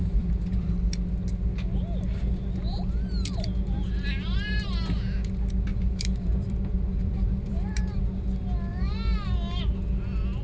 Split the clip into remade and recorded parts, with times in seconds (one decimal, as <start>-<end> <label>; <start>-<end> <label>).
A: 0.0-0.7 remade; 0.7-5.7 recorded; 5.7-8.0 remade; 8.0-8.7 recorded; 8.7-9.6 remade; 9.6-10.4 recorded